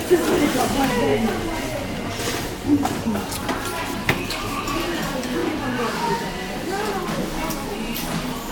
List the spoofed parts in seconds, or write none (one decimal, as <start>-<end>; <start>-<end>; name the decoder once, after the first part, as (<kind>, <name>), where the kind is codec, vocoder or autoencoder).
4.0-4.6 (codec, DAC)